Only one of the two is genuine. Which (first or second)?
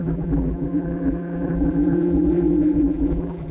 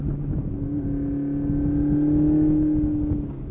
second